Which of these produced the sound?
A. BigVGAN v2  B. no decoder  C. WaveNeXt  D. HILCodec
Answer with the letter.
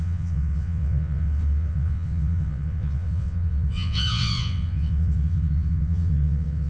C